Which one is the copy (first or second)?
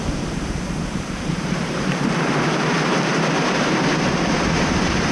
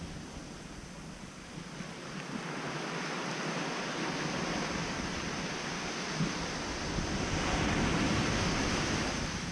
first